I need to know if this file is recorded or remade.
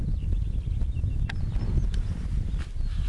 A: recorded